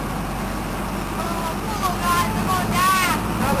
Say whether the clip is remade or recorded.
recorded